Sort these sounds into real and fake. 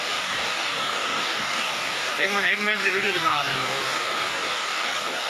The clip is fake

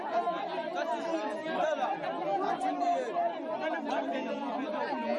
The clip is real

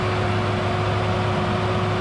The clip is real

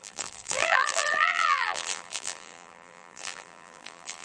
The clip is fake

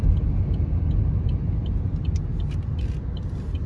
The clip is real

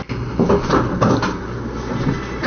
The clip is real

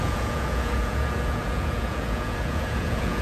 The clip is fake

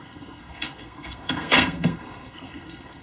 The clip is fake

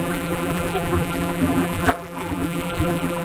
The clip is fake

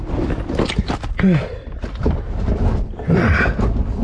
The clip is real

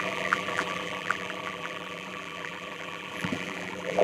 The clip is fake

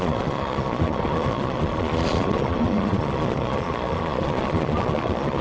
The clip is fake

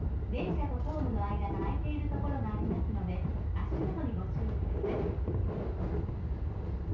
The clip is real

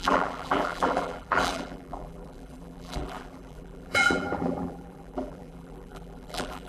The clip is fake